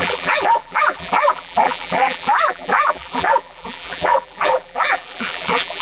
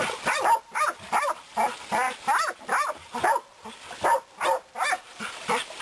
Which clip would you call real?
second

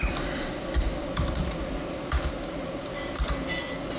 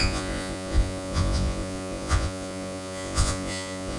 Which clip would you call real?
first